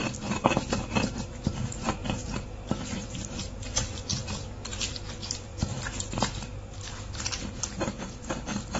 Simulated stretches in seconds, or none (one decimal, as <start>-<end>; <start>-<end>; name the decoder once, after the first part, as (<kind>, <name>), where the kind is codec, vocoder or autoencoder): 2.0-3.5 (vocoder, BigVGAN v2)